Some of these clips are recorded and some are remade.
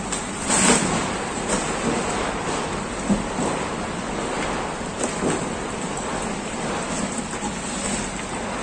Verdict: recorded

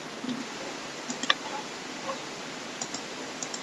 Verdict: recorded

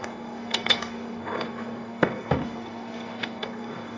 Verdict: remade